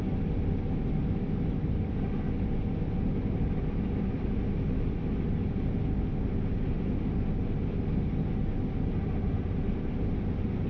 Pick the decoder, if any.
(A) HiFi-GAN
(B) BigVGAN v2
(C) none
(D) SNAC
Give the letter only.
C